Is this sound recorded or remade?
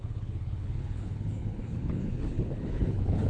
remade